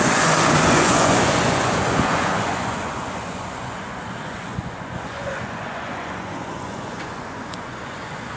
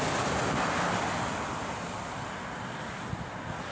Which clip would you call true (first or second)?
second